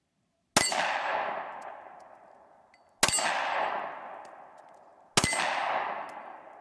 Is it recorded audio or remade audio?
recorded